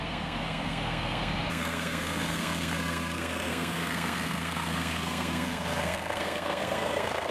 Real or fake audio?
fake